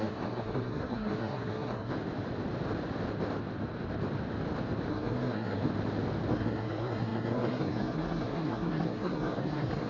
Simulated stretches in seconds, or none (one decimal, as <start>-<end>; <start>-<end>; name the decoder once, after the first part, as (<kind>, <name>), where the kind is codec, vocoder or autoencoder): 0.0-2.0 (codec, SNAC); 4.9-5.7; 6.3-9.9